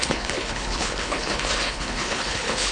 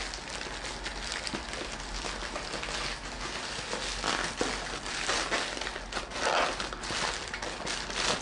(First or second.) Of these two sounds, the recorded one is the second